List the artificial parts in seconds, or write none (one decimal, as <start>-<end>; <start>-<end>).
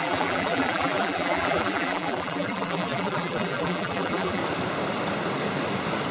0.0-4.4